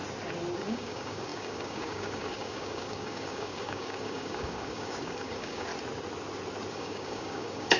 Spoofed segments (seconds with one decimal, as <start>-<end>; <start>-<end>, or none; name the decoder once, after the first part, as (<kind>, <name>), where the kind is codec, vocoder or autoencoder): 0.6-5.7 (codec, DAC); 6.7-7.8